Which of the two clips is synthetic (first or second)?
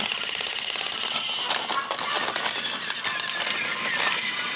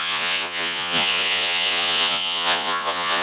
second